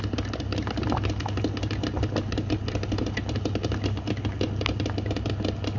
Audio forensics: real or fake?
real